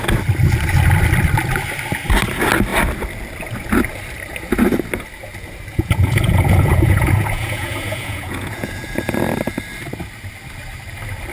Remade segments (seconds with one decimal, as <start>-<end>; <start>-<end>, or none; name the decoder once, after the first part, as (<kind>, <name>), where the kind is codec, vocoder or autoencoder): 5.7-9.2 (vocoder, Vocos)